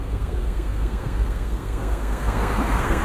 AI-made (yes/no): yes